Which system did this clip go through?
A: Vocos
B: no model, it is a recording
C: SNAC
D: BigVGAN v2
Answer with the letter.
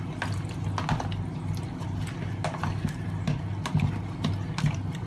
B